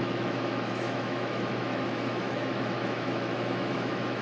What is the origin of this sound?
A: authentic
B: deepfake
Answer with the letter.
B